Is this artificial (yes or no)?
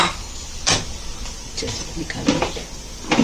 no